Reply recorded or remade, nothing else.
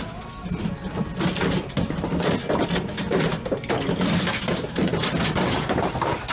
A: recorded